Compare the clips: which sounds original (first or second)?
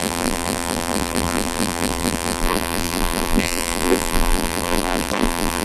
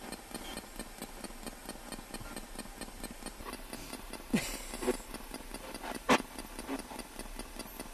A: second